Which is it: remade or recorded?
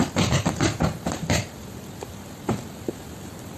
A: remade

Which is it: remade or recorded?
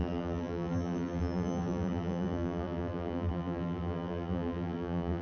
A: remade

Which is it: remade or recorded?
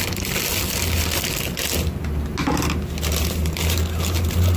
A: recorded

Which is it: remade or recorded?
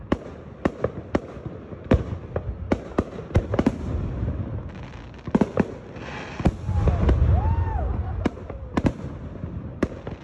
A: recorded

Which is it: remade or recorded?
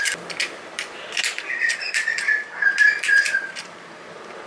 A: remade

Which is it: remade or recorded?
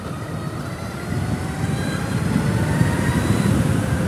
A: remade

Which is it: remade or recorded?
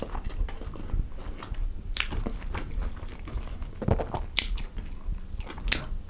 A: recorded